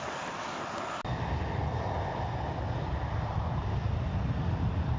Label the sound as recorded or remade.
recorded